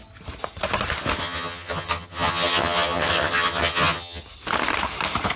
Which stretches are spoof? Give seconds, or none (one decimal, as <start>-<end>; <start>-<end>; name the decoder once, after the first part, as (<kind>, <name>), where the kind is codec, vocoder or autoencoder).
1.2-4.2 (vocoder, HiFi-GAN)